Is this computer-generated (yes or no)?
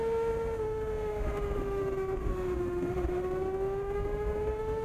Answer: yes